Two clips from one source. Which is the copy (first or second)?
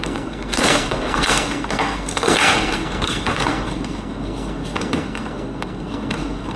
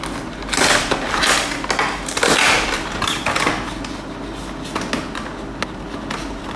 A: first